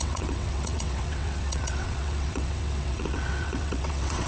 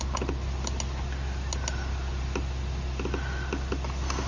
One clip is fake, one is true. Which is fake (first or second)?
first